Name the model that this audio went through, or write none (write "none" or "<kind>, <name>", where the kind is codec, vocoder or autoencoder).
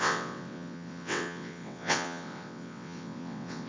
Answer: vocoder, WaveNeXt